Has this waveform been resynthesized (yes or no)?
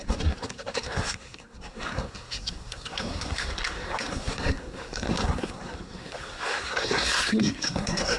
yes